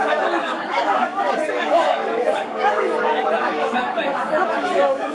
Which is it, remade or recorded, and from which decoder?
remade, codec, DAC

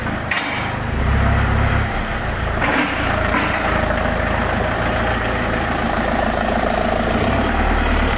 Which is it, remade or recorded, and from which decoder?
remade, vocoder, BigVGAN v2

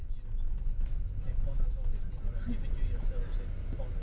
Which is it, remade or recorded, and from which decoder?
recorded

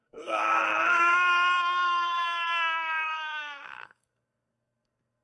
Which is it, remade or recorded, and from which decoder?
remade, codec, SNAC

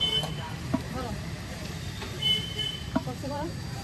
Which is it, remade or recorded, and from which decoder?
remade, vocoder, BigVGAN v2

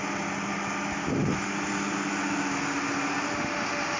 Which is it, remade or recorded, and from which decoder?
recorded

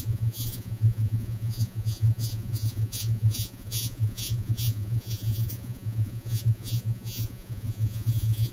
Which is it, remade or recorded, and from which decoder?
remade, vocoder, Vocos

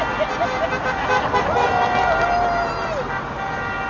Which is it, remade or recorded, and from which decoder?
recorded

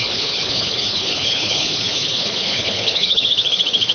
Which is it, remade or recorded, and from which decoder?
remade, codec, HILCodec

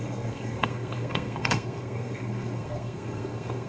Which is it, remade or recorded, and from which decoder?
remade, codec, SNAC